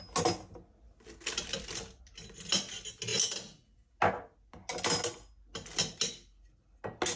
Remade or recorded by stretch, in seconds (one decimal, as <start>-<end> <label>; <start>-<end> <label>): 0.0-7.2 recorded